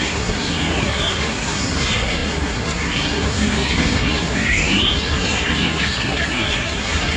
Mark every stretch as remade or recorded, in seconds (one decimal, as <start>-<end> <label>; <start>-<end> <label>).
0.0-7.2 remade

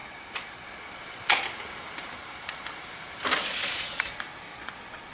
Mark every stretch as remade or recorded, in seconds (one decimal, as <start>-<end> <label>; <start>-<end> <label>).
0.0-1.4 remade; 1.4-3.4 recorded; 3.4-4.1 remade; 4.1-4.5 recorded; 4.5-5.1 remade

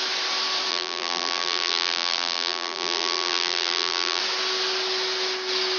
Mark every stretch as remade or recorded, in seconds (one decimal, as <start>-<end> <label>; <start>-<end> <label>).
0.0-0.7 recorded; 0.7-4.2 remade; 4.2-5.8 recorded

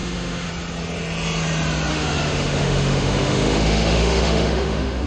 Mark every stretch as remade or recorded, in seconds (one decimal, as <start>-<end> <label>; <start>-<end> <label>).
0.0-0.5 remade; 0.5-1.9 recorded; 1.9-5.1 remade

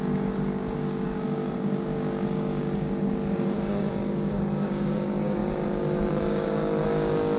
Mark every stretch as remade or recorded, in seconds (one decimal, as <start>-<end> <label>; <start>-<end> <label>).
0.0-7.4 remade

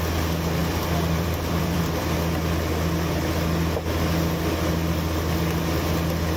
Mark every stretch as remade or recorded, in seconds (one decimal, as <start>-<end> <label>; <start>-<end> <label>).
0.0-0.6 recorded; 0.6-2.0 remade; 2.0-6.4 recorded

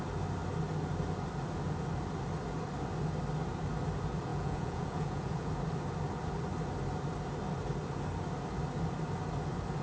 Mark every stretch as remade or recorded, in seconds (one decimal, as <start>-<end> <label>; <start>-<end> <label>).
0.0-4.3 recorded; 4.3-5.5 remade; 5.5-9.8 recorded

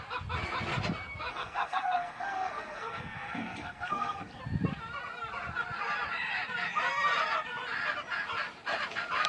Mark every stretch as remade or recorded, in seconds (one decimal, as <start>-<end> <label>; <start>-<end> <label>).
0.0-1.3 recorded; 1.3-4.4 remade; 4.4-9.3 recorded